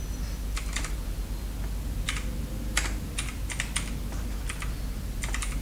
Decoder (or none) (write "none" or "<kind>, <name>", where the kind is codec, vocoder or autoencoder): none